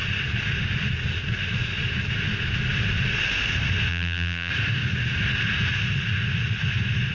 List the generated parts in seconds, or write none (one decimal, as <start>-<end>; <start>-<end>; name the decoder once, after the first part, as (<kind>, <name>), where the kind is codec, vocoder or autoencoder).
3.9-4.5 (vocoder, BigVGAN v2)